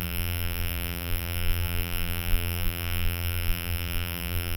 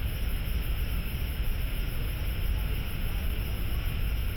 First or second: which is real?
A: second